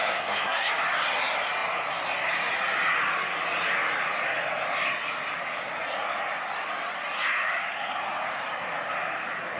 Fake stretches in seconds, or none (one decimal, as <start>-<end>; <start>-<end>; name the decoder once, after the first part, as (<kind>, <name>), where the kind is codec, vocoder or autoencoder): 0.0-0.7 (codec, SNAC)